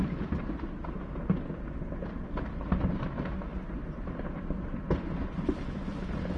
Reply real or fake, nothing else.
real